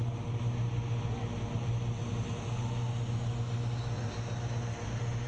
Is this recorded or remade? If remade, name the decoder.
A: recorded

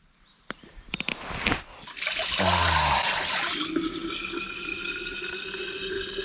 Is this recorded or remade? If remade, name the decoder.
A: recorded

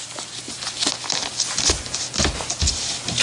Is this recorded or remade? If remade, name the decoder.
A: recorded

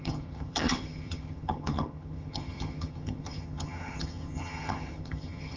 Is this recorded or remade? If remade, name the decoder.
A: remade, vocoder, HiFi-GAN